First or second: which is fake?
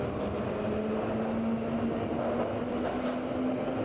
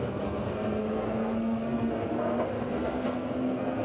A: second